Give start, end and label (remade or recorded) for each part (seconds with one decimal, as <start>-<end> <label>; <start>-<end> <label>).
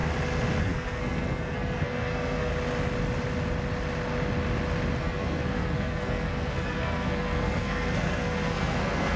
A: 0.0-0.6 recorded; 0.6-2.5 remade; 2.5-5.0 recorded; 5.0-9.2 remade